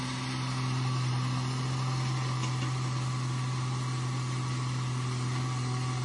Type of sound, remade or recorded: recorded